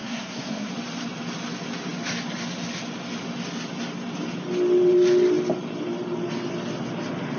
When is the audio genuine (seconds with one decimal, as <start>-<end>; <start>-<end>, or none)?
0.7-7.4